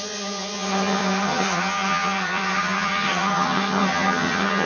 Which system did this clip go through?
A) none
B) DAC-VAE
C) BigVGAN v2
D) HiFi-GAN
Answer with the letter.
D